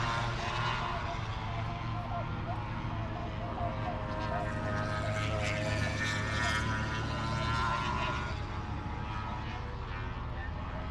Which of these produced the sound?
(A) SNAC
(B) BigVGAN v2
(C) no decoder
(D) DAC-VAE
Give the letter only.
C